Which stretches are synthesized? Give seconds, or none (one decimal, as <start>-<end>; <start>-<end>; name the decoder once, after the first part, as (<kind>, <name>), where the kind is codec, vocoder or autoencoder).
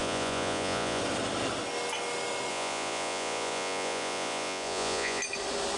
0.0-1.0 (vocoder, Vocos); 2.5-5.2